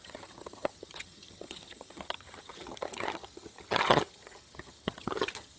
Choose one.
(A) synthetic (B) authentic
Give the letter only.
A